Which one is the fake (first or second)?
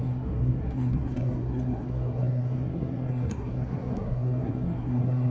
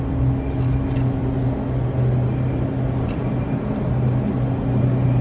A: first